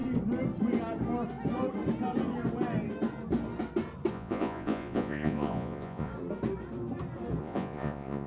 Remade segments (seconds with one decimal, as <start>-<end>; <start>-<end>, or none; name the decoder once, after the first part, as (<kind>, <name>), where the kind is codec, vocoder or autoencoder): 4.1-6.1 (vocoder, Vocos); 7.4-8.3